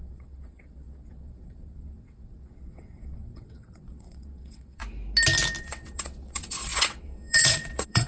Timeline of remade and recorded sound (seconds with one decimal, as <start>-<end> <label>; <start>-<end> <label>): 0.0-4.8 remade; 4.8-5.6 recorded; 5.6-8.1 remade